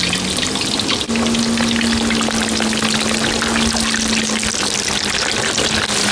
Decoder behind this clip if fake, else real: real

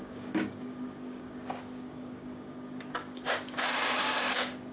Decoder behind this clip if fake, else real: fake, codec, DAC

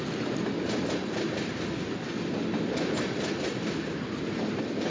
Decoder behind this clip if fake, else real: real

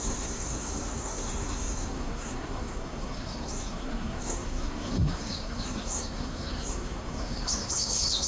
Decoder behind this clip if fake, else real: fake, codec, SNAC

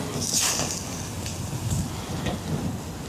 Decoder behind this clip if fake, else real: real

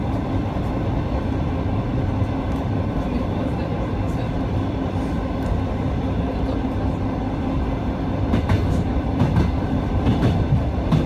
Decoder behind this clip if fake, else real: real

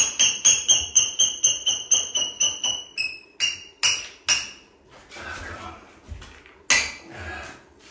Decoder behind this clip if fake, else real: real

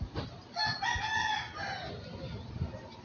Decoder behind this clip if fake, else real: real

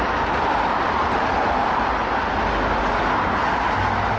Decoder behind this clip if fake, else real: real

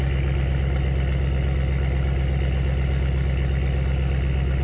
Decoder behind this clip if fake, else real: real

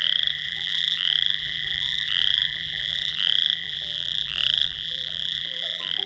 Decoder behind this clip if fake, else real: fake, vocoder, BigVGAN v2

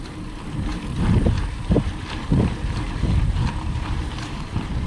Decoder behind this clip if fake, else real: fake, vocoder, BigVGAN v2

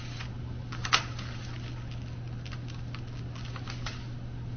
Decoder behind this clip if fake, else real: real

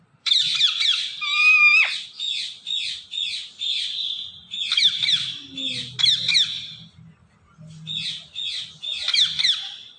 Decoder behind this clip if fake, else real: real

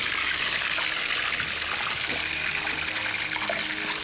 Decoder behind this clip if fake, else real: real